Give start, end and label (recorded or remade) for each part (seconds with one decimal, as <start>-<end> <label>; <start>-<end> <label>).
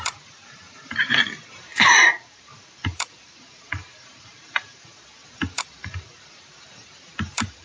0.0-7.6 remade